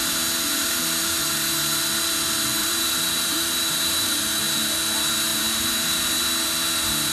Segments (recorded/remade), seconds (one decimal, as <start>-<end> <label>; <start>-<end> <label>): 0.0-0.5 recorded; 0.5-1.2 remade; 1.2-2.6 recorded; 2.6-4.4 remade; 4.4-5.3 recorded; 5.3-6.1 remade; 6.1-7.1 recorded